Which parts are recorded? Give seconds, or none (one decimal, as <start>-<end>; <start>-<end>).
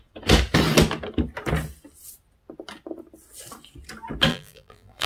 0.0-4.3